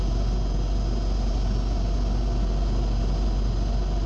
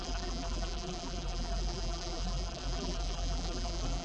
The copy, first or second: second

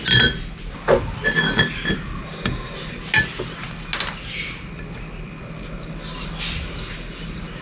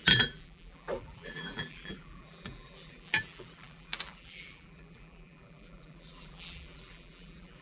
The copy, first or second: second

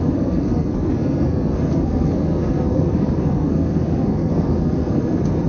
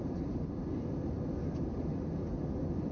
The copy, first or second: first